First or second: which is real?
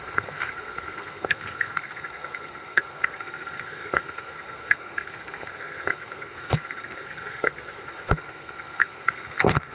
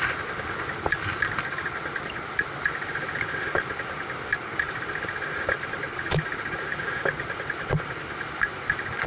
second